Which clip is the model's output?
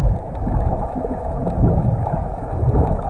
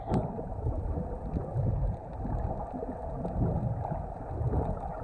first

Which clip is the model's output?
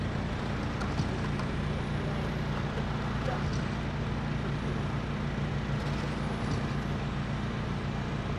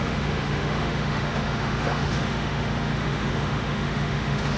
second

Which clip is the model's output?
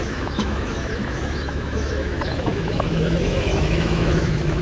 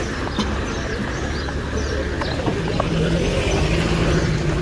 first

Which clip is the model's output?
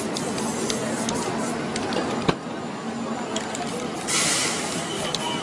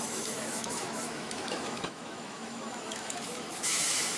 second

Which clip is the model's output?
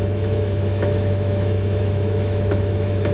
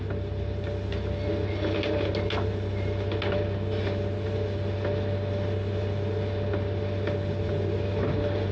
first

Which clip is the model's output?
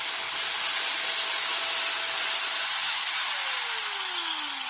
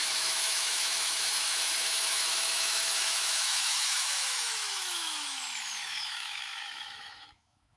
second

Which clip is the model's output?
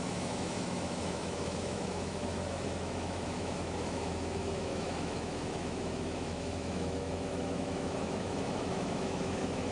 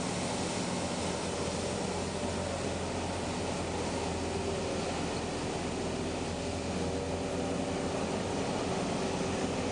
first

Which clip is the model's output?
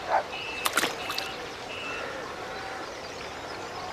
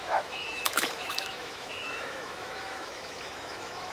second